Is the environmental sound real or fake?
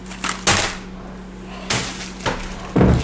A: real